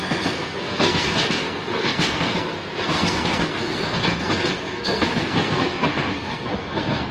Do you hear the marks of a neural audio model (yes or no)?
yes